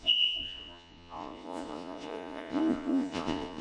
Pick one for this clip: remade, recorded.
remade